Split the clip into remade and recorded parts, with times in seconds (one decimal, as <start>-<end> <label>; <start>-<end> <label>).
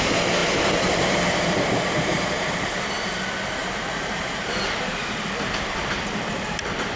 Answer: 0.0-0.4 recorded; 0.4-2.9 remade; 2.9-3.6 recorded; 3.6-4.3 remade; 4.3-7.0 recorded